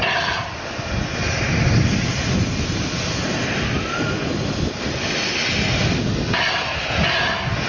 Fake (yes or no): no